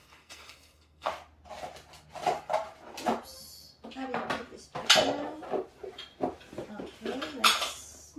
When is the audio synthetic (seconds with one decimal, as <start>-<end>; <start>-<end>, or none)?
0.0-1.1